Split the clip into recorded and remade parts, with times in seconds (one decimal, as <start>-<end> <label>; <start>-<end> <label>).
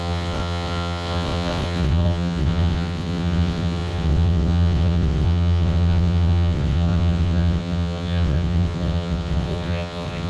0.0-10.3 remade